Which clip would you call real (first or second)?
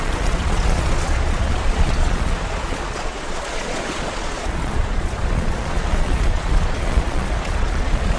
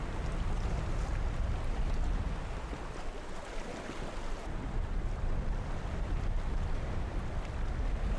second